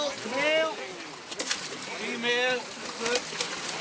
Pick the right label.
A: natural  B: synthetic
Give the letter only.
A